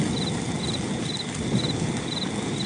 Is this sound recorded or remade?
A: recorded